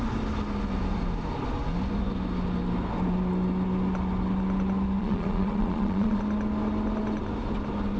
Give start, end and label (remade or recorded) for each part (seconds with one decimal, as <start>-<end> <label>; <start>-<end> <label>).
0.0-5.0 recorded; 5.0-6.2 remade; 6.2-8.0 recorded

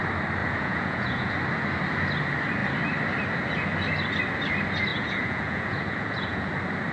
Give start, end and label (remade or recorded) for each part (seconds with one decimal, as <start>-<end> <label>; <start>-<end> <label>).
0.0-0.4 recorded; 0.4-1.3 remade; 1.3-4.9 recorded; 4.9-6.5 remade; 6.5-6.9 recorded

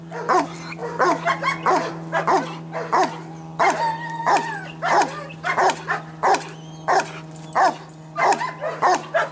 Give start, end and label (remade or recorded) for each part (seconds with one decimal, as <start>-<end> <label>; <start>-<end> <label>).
0.0-9.3 recorded

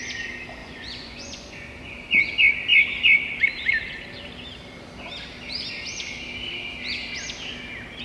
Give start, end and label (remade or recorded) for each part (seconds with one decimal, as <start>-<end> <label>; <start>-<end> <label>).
0.0-0.6 recorded; 0.6-2.3 remade; 2.3-8.0 recorded

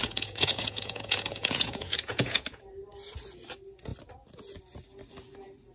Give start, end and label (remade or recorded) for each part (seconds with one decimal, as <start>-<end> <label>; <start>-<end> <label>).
0.0-2.6 remade; 2.6-5.7 recorded

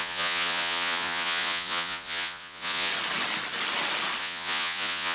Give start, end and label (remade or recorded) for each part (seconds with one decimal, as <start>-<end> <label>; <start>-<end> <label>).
0.0-2.9 remade; 2.9-4.2 recorded; 4.2-5.1 remade